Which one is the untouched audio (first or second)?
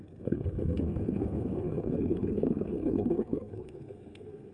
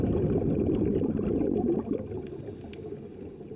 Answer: second